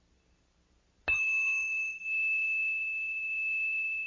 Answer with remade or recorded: recorded